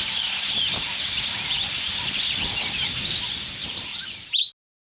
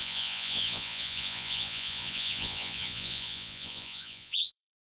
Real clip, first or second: first